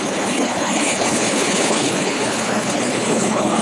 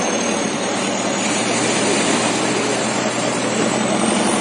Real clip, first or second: second